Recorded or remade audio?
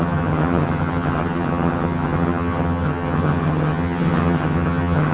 remade